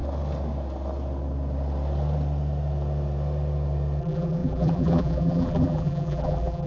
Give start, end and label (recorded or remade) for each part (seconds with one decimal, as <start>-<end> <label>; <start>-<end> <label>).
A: 0.0-4.0 recorded; 4.0-6.7 remade